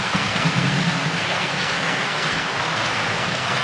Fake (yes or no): yes